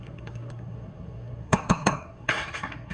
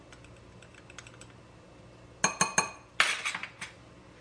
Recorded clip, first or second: second